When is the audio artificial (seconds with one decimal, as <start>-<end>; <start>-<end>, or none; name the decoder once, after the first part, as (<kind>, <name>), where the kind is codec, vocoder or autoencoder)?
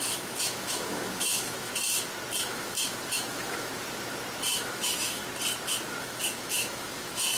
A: 0.0-1.7 (autoencoder, DAC-VAE); 2.4-3.7; 4.5-5.2; 6.0-7.4